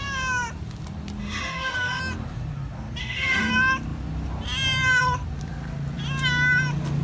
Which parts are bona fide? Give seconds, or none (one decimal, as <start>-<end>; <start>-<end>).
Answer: 0.0-1.2; 2.0-3.0; 3.5-7.0